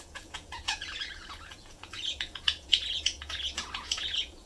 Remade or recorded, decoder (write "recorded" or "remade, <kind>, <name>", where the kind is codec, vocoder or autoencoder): remade, vocoder, Vocos